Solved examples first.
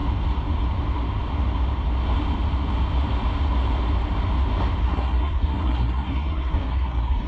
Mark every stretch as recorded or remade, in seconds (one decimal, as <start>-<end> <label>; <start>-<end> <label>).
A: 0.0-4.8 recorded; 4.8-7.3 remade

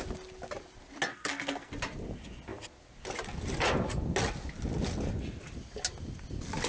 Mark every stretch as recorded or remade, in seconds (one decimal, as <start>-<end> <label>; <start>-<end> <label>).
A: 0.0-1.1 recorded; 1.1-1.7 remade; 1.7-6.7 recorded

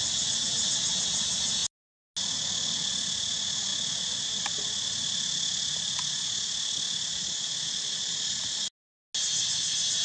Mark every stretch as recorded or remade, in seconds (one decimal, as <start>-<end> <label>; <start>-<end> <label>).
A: 0.0-10.0 recorded

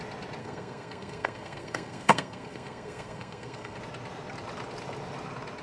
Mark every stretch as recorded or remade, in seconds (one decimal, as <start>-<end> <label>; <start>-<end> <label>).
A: 0.0-0.4 recorded; 0.4-3.8 remade; 3.8-5.6 recorded